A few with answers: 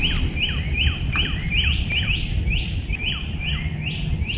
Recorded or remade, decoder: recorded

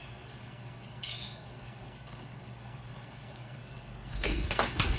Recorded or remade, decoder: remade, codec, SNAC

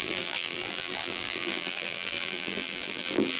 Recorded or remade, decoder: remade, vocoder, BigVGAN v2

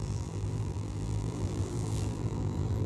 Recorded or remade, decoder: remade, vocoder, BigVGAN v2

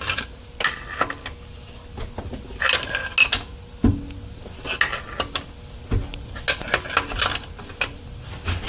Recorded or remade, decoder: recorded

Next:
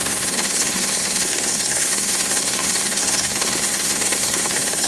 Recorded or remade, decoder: remade, codec, SNAC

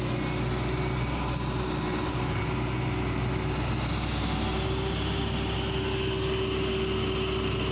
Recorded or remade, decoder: recorded